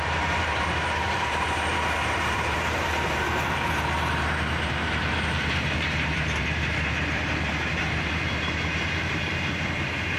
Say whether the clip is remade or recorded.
remade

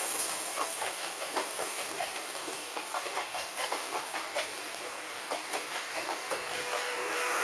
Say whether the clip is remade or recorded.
remade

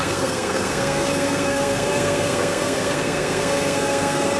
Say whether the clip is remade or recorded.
remade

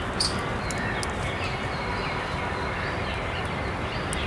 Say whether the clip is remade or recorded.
recorded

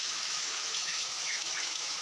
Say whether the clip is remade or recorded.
remade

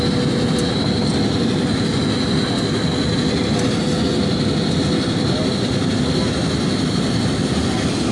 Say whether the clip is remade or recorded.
recorded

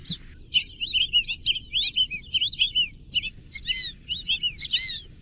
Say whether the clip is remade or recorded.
recorded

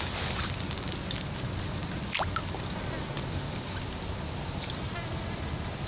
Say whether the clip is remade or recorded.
recorded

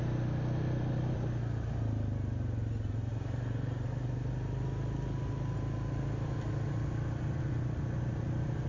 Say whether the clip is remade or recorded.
recorded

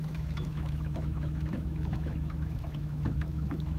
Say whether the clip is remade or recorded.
remade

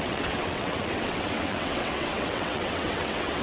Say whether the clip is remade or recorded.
remade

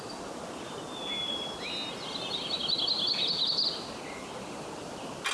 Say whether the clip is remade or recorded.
recorded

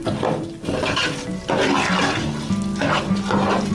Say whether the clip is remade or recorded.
recorded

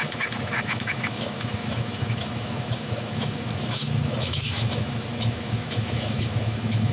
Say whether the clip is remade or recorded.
remade